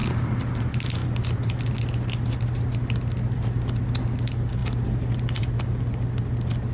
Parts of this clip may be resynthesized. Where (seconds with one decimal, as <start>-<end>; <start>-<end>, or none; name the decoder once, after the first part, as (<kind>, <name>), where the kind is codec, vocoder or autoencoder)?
none